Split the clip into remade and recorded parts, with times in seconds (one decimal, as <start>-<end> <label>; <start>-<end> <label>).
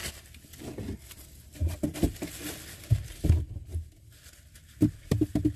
0.0-5.6 recorded